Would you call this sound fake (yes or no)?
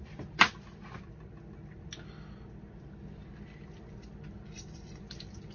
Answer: no